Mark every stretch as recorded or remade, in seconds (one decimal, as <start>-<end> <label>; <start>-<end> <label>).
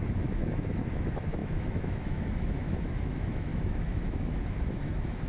0.0-5.3 remade